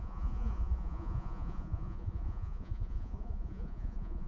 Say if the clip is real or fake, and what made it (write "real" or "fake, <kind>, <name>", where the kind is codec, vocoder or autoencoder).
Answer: fake, vocoder, Vocos